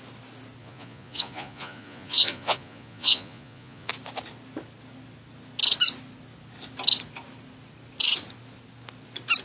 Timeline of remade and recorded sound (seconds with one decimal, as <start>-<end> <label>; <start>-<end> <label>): 0.0-0.6 recorded; 0.6-3.9 remade; 3.9-9.4 recorded